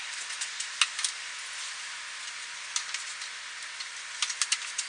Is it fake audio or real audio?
real